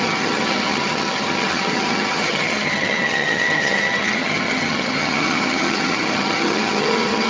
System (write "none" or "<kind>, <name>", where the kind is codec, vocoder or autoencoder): vocoder, HiFi-GAN